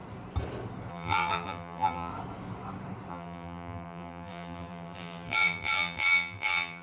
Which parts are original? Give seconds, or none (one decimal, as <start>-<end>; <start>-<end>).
0.0-0.9; 2.1-3.1